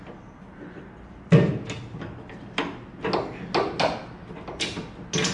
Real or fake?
real